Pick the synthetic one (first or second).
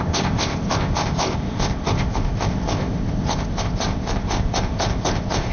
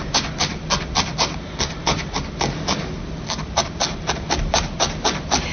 first